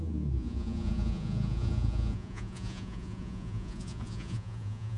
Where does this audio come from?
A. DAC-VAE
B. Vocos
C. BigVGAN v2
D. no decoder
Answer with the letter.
B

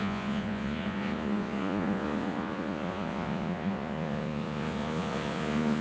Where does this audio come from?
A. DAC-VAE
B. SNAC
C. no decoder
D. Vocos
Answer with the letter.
D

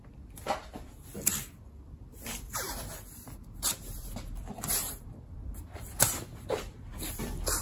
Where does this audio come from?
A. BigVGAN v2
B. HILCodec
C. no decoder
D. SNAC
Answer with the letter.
A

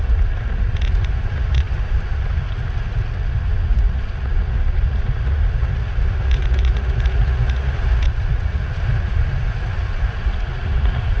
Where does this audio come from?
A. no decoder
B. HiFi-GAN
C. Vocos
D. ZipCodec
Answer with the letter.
C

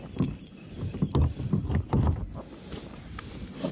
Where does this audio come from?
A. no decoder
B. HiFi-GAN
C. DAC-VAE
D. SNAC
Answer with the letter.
A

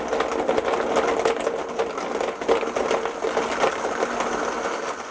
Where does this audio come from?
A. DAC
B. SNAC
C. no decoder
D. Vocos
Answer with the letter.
C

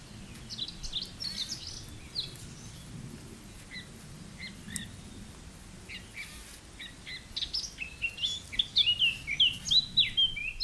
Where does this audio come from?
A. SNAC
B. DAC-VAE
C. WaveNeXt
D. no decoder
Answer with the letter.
D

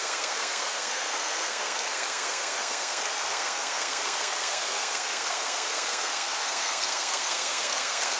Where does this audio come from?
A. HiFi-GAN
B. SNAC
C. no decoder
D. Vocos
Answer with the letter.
B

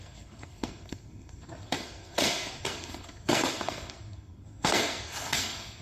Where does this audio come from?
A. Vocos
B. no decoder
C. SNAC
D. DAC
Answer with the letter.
C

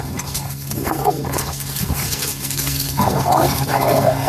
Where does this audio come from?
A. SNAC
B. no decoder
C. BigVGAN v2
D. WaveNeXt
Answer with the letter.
A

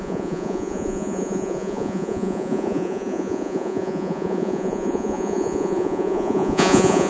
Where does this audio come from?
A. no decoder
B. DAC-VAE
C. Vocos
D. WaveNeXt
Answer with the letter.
C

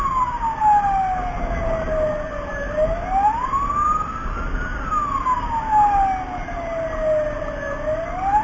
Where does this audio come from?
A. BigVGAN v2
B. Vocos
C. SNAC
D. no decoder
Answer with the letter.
D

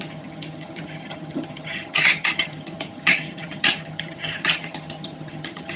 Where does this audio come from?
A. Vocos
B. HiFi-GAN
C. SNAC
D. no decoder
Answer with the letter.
B